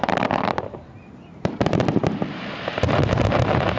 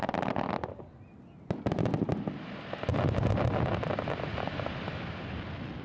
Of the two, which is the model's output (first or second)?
first